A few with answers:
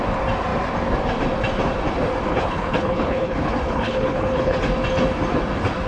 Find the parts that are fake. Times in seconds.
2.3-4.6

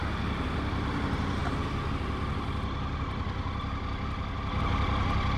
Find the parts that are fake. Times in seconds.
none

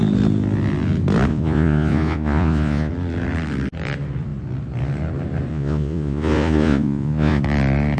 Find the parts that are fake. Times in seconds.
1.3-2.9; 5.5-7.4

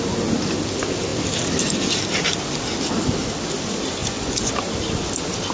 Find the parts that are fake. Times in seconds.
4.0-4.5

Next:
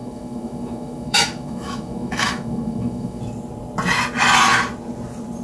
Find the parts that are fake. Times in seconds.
0.0-3.2

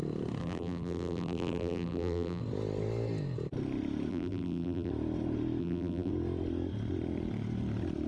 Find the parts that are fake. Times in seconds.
0.4-2.4; 4.1-4.9; 5.6-6.1

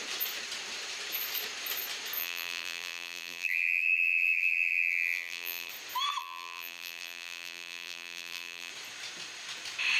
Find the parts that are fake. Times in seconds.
2.2-5.7; 6.2-8.7

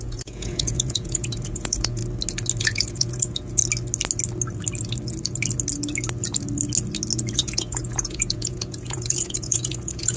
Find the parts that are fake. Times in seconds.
0.0-2.0; 2.6-3.6; 7.3-10.2